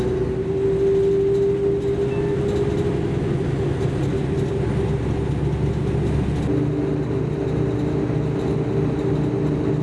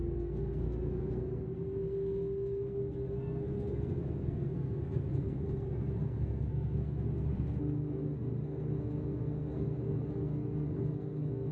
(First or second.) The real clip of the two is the first